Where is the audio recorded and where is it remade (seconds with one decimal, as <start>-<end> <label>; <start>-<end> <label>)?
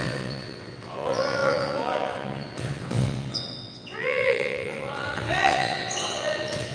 0.0-6.7 remade